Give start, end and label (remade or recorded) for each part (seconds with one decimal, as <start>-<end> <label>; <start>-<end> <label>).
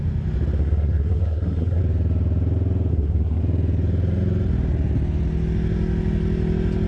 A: 0.0-0.6 recorded; 0.6-1.8 remade; 1.8-2.9 recorded; 2.9-3.4 remade; 3.4-6.9 recorded